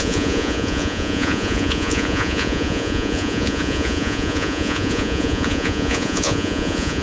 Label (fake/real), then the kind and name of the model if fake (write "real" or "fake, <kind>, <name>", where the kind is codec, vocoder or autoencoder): fake, vocoder, Vocos